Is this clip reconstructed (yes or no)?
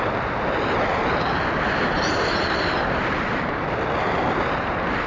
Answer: no